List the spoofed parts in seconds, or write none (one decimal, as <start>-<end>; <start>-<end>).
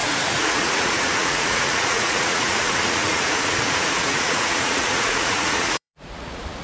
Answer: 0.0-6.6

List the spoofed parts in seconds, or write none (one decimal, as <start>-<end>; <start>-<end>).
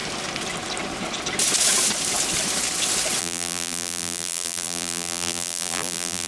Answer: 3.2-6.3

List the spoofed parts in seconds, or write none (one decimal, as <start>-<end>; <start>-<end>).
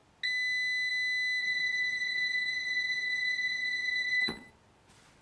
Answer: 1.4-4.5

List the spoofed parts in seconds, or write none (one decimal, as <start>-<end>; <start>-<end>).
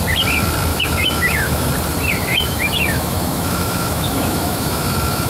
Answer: 0.7-1.7; 2.3-5.3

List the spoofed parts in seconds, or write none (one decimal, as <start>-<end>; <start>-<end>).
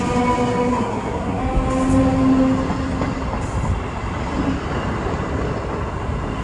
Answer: 0.7-1.4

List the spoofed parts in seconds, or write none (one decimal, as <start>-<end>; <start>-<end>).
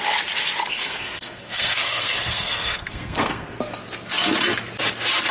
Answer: 0.7-3.6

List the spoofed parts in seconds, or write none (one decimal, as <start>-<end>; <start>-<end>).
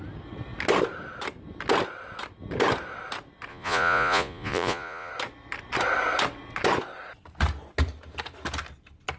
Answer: 3.5-5.1